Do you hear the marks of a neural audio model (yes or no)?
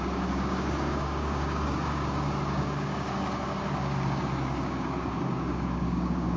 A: yes